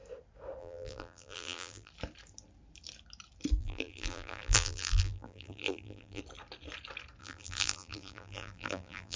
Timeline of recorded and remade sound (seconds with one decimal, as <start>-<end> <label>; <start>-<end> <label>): 0.0-0.6 recorded; 0.6-1.9 remade; 1.9-3.6 recorded; 3.6-6.2 remade; 6.2-7.2 recorded; 7.2-9.2 remade